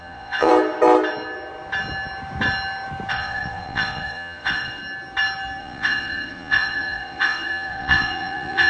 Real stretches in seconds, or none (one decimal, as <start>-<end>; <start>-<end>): 0.5-3.1; 4.8-5.6

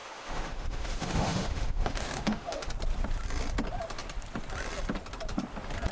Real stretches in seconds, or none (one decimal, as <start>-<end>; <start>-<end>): 2.7-5.9